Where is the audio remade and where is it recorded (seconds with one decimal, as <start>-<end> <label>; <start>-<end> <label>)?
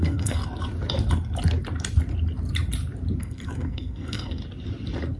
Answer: 0.0-0.4 remade; 0.4-3.2 recorded; 3.2-4.4 remade; 4.4-5.2 recorded